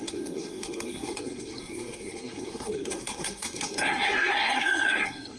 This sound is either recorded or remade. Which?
remade